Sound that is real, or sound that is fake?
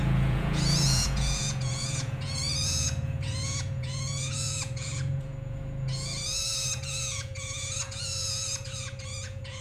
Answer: fake